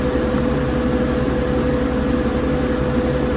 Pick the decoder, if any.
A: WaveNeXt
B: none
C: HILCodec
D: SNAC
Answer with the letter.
B